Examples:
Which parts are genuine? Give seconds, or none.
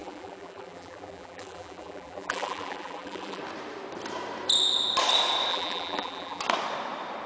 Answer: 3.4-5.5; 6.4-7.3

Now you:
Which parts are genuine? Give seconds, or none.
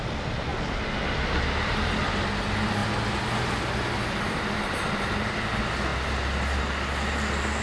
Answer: 0.0-7.6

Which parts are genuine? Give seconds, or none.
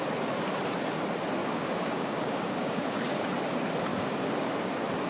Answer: 0.0-1.4; 3.3-5.1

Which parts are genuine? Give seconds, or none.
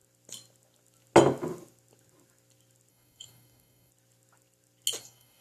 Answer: 0.0-2.9; 3.9-5.0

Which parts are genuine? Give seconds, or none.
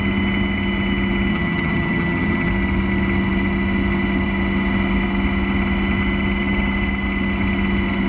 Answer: 0.0-1.3; 2.5-8.1